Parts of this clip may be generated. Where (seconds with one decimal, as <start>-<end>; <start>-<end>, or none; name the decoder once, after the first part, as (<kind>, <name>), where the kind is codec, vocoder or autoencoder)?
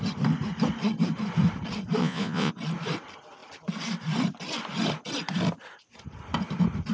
2.0-2.5 (vocoder, Vocos)